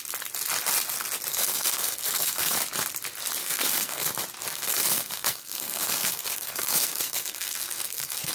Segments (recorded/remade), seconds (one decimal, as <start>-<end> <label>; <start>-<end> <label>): 0.0-1.3 recorded; 1.3-2.6 remade; 2.6-3.4 recorded; 3.4-4.1 remade; 4.1-4.5 recorded; 4.5-8.3 remade